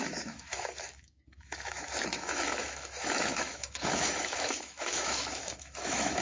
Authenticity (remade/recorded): remade